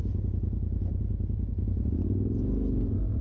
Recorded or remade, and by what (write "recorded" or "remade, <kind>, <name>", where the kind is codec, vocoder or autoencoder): recorded